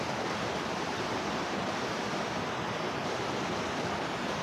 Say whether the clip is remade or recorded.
remade